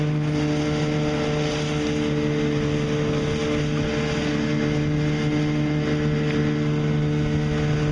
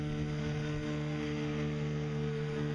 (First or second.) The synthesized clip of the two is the second